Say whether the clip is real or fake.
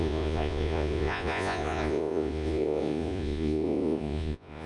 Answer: fake